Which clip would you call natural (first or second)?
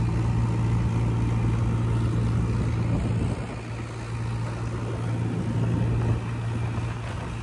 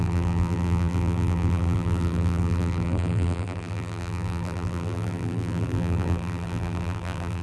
first